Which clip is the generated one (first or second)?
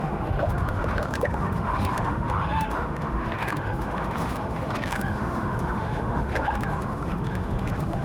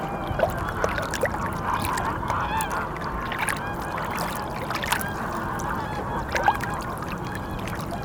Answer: first